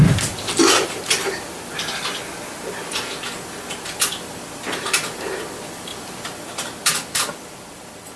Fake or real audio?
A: fake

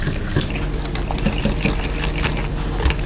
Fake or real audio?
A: real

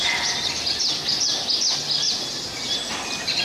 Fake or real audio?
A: real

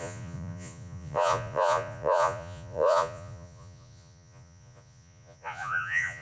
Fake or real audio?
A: fake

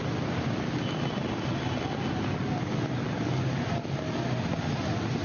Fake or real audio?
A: real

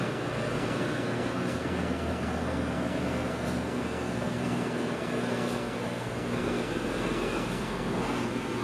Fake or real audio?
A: fake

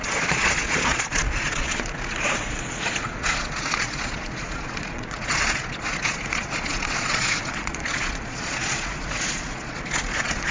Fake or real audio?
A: fake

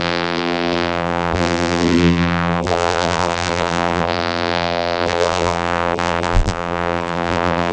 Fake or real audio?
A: fake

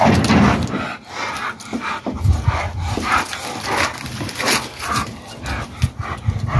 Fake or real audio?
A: real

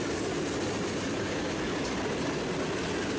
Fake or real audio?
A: real